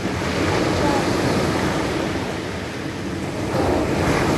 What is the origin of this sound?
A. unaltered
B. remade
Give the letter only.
A